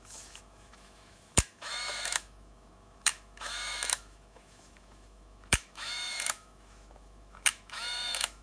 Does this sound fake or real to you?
fake